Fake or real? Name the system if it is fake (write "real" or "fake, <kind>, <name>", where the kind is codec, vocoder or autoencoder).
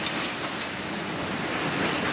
real